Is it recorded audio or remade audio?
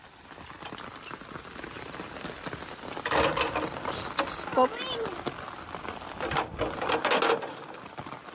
recorded